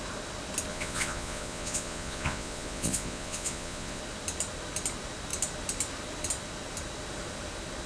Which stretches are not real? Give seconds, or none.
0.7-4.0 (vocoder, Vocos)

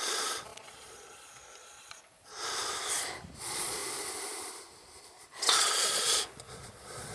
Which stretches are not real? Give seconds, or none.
0.0-2.3 (vocoder, Vocos); 3.4-3.8; 5.3-7.1

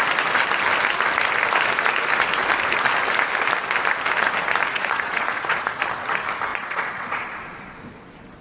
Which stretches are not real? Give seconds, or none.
4.7-5.8 (vocoder, Vocos); 6.5-7.8

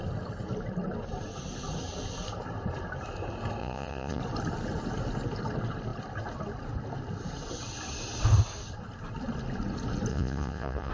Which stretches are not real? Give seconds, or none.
3.6-4.2 (vocoder, Vocos); 10.1-10.9

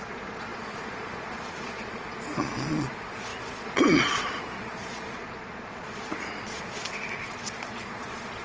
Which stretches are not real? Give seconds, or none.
0.0-8.4 (vocoder, Vocos)

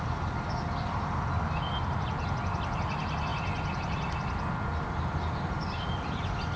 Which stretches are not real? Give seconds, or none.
none